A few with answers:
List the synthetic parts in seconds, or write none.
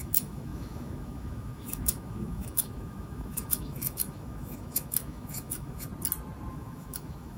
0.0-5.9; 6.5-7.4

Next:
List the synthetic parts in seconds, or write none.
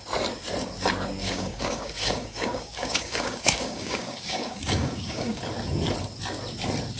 1.2-5.4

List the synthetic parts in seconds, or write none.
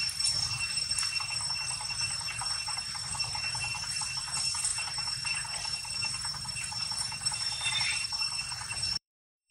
4.7-9.5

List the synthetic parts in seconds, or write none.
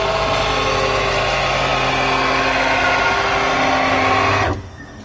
none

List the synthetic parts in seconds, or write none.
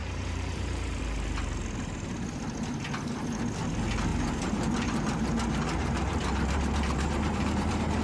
0.0-1.0; 4.1-8.0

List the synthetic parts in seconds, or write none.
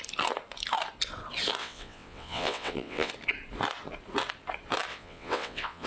1.6-3.1; 4.9-5.9